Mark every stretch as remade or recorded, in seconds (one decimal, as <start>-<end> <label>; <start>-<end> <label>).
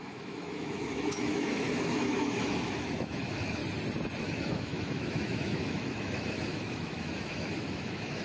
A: 0.0-3.6 remade; 3.6-4.2 recorded; 4.2-8.2 remade